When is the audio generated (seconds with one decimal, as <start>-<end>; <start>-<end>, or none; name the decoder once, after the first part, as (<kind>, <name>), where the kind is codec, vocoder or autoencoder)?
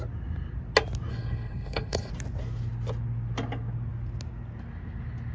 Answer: 1.1-2.1 (codec, HILCodec)